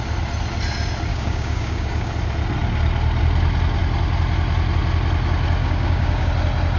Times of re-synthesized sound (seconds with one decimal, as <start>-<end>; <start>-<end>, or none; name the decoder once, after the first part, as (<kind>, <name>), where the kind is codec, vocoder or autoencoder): 1.1-2.1 (codec, DAC); 5.6-6.3